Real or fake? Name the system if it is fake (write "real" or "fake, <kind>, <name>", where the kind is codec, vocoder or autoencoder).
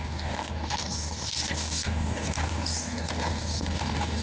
fake, codec, DAC